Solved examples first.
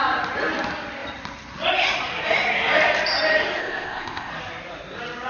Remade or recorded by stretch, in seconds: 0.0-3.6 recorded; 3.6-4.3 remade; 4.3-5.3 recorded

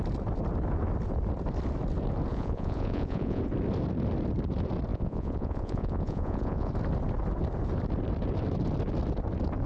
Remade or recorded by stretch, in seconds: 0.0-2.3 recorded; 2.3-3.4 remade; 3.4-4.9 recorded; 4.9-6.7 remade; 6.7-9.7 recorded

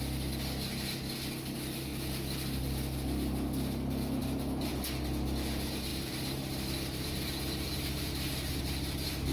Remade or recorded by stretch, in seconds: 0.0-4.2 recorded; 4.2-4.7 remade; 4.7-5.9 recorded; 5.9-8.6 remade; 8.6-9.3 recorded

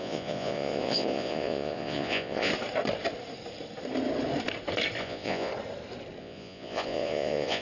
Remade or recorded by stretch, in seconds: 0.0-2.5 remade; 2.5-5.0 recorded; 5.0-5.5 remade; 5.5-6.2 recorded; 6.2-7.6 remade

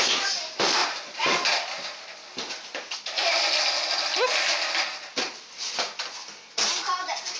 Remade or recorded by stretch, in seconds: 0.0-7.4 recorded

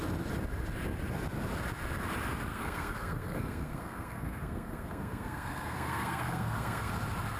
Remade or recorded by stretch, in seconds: 0.0-2.5 recorded; 2.5-6.9 remade; 6.9-7.4 recorded